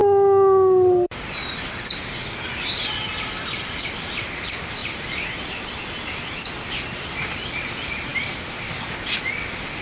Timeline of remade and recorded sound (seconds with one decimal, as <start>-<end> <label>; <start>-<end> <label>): 0.0-4.8 recorded; 4.8-5.8 remade; 5.8-9.8 recorded